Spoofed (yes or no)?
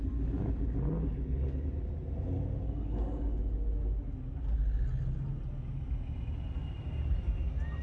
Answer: no